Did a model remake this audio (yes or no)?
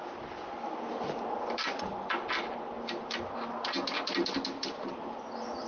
no